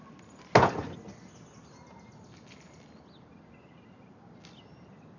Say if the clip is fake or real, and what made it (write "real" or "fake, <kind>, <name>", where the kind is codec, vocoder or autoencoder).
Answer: real